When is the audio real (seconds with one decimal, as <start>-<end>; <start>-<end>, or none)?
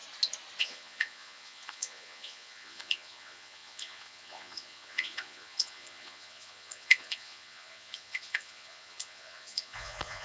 0.0-0.6